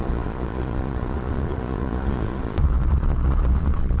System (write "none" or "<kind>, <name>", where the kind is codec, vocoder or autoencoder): vocoder, Vocos